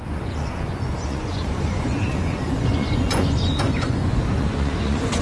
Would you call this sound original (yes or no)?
no